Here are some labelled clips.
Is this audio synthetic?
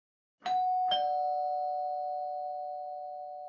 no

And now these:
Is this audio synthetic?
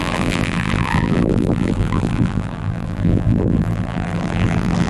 yes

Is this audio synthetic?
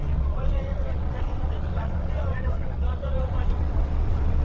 yes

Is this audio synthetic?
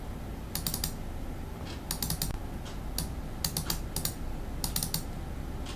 no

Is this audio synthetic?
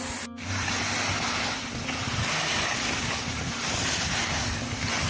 no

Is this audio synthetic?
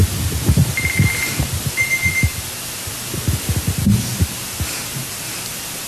no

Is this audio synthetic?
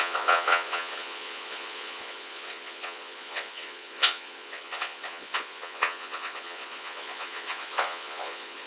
yes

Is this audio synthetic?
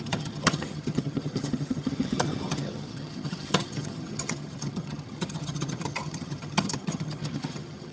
yes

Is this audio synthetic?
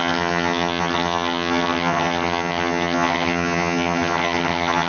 yes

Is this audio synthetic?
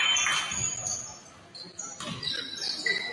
no